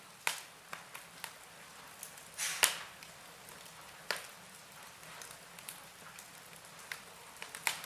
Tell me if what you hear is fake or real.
real